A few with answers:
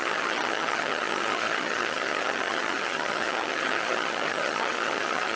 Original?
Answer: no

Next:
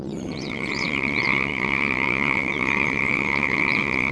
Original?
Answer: no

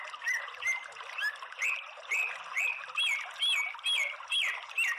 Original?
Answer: yes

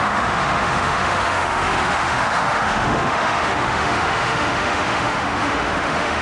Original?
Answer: no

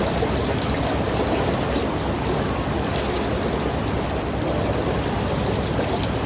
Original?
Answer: yes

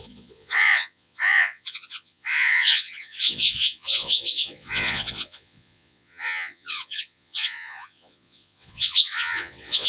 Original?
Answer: no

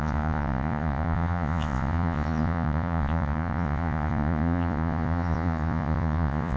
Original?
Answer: no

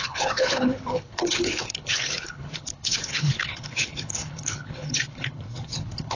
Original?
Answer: no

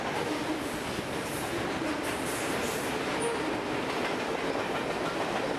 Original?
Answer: yes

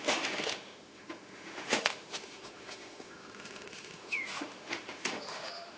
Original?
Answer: no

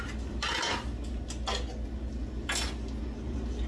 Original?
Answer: yes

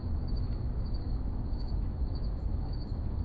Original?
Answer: no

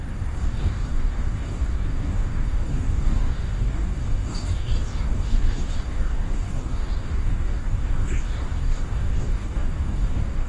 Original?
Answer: no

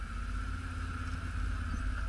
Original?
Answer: yes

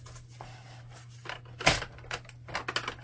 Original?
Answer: yes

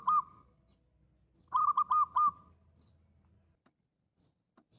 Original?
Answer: yes